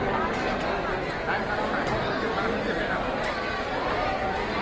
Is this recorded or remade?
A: recorded